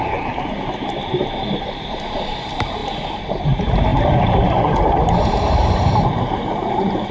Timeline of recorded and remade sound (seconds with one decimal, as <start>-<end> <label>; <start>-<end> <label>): 0.0-7.1 remade